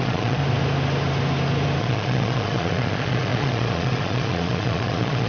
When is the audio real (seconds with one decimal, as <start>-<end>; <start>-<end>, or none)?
0.4-1.8

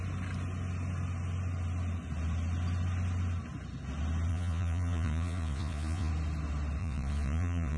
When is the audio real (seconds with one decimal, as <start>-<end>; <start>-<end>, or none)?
0.0-4.3; 6.1-6.8

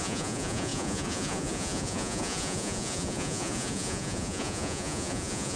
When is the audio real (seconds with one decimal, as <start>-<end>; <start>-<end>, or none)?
none